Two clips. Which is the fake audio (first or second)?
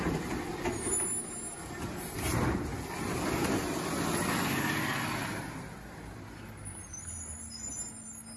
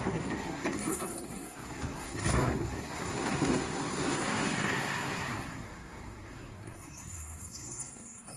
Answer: second